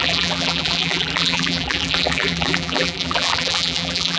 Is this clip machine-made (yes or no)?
yes